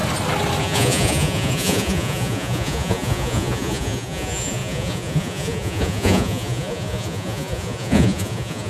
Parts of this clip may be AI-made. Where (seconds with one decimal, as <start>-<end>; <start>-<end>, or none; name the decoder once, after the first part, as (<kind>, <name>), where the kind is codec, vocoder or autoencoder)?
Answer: 0.6-8.7 (vocoder, Vocos)